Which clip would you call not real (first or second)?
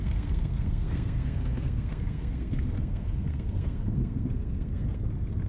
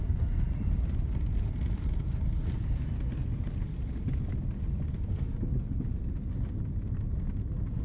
first